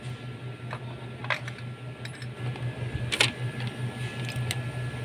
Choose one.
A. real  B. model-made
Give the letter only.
A